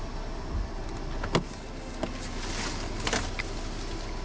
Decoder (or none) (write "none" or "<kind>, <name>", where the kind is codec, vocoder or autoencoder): none